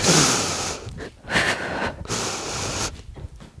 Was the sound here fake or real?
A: real